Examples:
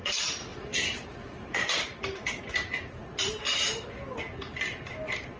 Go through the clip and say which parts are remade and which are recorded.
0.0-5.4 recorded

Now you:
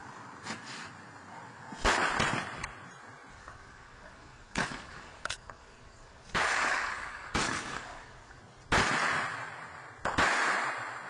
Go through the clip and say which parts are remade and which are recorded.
0.0-3.3 recorded; 3.3-8.4 remade; 8.4-11.1 recorded